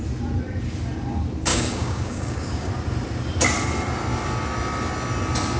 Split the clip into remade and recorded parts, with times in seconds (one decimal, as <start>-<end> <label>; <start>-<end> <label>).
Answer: 0.0-1.5 recorded; 1.5-2.7 remade; 2.7-5.6 recorded